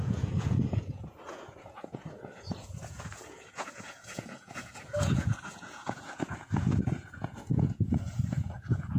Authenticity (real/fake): fake